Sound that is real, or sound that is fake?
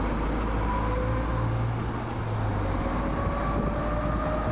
real